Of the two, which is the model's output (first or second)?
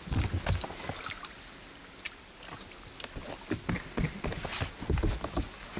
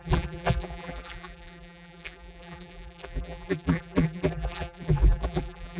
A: second